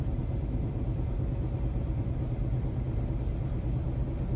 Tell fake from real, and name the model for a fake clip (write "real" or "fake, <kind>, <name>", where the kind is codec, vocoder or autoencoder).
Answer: real